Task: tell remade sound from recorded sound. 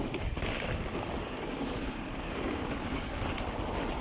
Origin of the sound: recorded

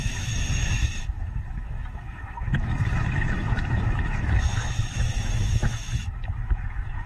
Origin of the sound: remade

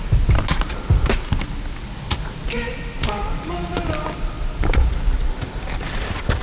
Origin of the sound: recorded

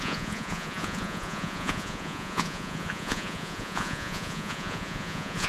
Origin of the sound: remade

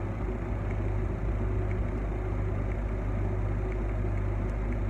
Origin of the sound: recorded